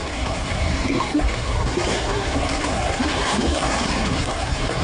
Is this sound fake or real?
fake